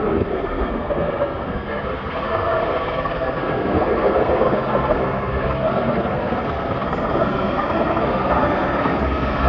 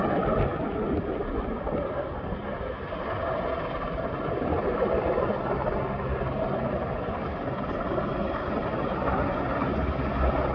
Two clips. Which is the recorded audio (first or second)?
second